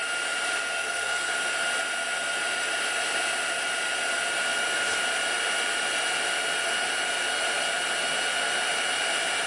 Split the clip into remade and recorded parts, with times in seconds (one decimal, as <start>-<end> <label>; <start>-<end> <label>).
0.0-0.8 recorded; 0.8-1.3 remade; 1.3-9.5 recorded

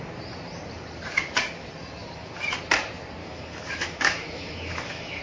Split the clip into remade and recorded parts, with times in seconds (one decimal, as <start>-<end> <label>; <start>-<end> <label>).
0.0-3.2 recorded; 3.2-5.2 remade

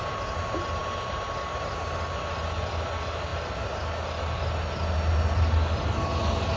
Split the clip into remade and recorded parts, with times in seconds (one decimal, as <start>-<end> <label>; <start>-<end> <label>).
0.0-6.6 recorded

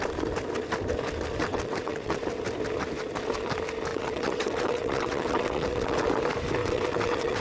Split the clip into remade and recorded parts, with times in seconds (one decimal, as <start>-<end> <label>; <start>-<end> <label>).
0.0-1.4 recorded; 1.4-2.2 remade; 2.2-3.9 recorded; 3.9-6.1 remade; 6.1-6.6 recorded; 6.6-7.4 remade

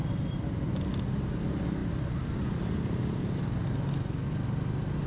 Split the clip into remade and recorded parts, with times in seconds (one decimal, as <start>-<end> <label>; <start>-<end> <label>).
0.0-5.1 recorded

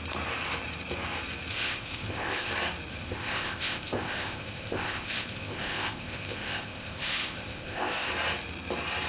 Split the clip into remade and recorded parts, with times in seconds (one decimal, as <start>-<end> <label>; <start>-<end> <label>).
0.0-1.5 recorded; 1.5-2.5 remade; 2.5-2.9 recorded; 2.9-8.1 remade; 8.1-9.1 recorded